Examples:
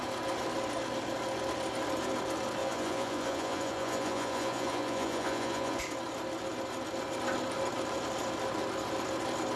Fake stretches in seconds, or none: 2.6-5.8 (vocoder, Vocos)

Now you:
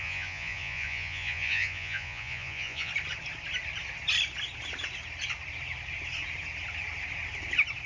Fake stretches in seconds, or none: 0.0-2.9 (vocoder, Vocos)

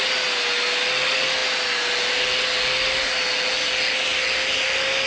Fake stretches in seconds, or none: none

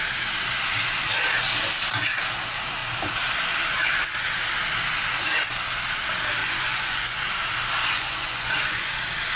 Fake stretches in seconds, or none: 6.4-7.2 (vocoder, Vocos); 7.8-8.9

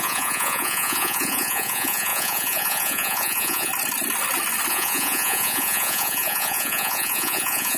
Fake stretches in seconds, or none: 0.0-3.7 (vocoder, Vocos); 4.7-7.8